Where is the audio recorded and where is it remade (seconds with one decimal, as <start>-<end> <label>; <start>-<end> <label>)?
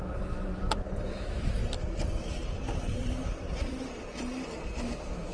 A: 0.0-0.5 remade; 0.5-1.1 recorded; 1.1-1.6 remade; 1.6-4.8 recorded; 4.8-5.3 remade